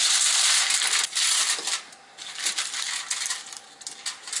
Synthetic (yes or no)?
no